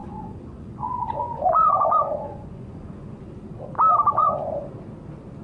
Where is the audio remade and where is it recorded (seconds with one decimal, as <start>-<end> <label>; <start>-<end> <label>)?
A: 0.0-3.2 remade; 3.2-4.2 recorded; 4.2-4.7 remade; 4.7-5.4 recorded